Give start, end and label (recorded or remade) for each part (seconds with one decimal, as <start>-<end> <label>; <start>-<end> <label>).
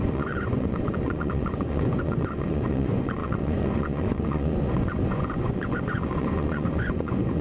0.0-7.4 remade